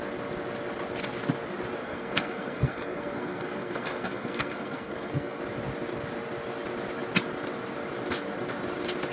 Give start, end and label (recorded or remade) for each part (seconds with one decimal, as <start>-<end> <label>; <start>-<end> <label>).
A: 0.0-1.8 recorded; 1.8-5.4 remade; 5.4-9.1 recorded